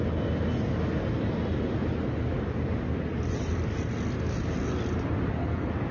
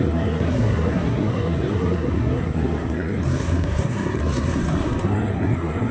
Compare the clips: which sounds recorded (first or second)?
first